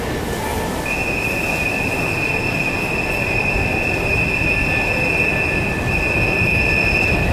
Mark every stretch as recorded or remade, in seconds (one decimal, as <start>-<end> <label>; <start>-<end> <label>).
0.0-7.3 recorded